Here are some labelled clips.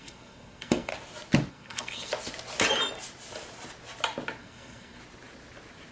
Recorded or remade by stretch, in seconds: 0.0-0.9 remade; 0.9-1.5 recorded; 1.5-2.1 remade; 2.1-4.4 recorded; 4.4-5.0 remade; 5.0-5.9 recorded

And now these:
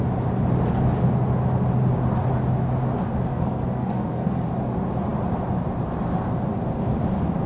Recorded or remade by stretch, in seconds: 0.0-3.3 recorded; 3.3-4.5 remade; 4.5-7.5 recorded

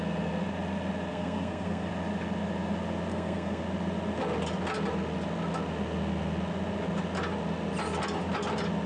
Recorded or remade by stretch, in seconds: 0.0-1.1 recorded; 1.1-1.9 remade; 1.9-3.1 recorded; 3.1-3.6 remade; 3.6-8.9 recorded